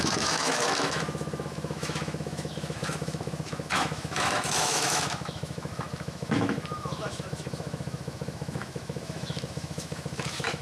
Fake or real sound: fake